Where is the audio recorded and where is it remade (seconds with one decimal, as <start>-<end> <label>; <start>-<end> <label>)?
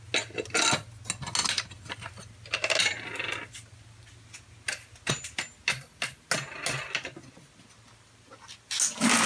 0.0-9.3 recorded